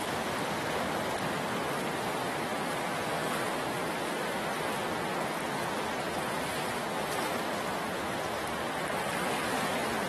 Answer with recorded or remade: recorded